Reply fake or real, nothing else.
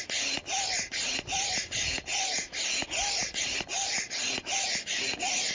real